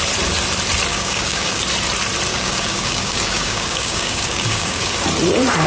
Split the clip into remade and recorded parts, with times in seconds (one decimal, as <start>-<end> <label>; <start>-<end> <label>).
0.0-0.9 recorded; 0.9-1.6 remade; 1.6-2.3 recorded; 2.3-5.0 remade; 5.0-5.7 recorded